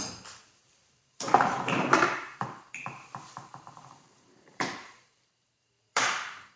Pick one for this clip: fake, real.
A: fake